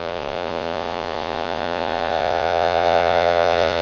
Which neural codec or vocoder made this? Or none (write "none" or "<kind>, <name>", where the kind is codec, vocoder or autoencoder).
vocoder, Vocos